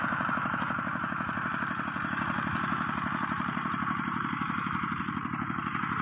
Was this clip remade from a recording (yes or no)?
yes